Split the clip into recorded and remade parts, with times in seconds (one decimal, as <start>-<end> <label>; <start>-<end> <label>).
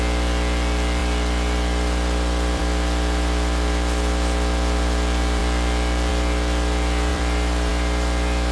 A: 0.0-1.0 recorded; 1.0-2.6 remade; 2.6-7.1 recorded; 7.1-7.7 remade; 7.7-8.5 recorded